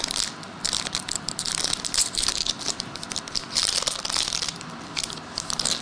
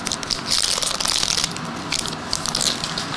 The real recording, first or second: second